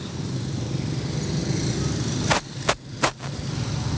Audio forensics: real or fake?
real